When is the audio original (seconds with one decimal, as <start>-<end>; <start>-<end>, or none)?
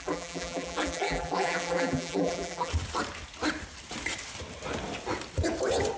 2.7-6.0